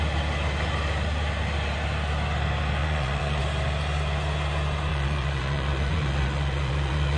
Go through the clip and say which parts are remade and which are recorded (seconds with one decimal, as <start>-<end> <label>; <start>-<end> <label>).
0.0-2.8 recorded; 2.8-3.4 remade; 3.4-4.9 recorded; 4.9-7.2 remade